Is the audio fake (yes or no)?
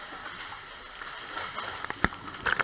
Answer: no